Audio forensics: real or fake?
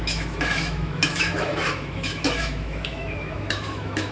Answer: fake